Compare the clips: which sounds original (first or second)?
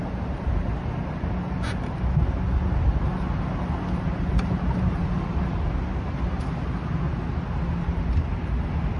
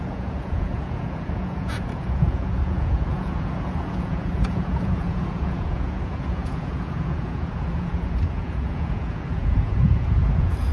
first